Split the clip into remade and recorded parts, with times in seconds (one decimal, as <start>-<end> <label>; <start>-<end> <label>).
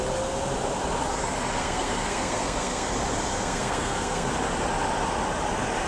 0.0-1.6 recorded; 1.6-2.9 remade; 2.9-3.3 recorded; 3.3-4.3 remade; 4.3-5.9 recorded